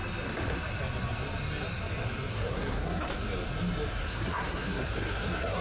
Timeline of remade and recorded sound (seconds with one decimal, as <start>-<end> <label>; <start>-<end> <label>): 0.0-2.3 recorded; 2.3-3.1 remade; 3.1-4.0 recorded; 4.0-5.6 remade